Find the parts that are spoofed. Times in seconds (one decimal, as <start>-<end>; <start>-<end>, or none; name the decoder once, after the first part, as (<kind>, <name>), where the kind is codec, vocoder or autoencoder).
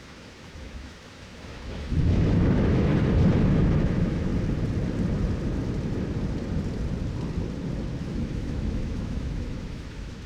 0.0-2.9 (autoencoder, DAC-VAE); 3.4-4.3; 8.0-10.3